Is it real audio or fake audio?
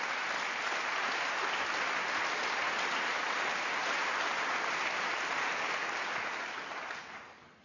real